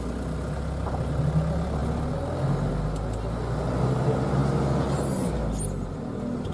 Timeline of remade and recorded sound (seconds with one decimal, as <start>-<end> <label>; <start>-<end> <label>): 0.0-6.5 recorded